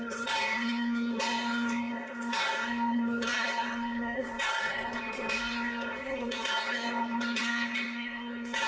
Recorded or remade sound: remade